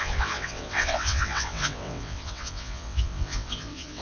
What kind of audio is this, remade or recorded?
remade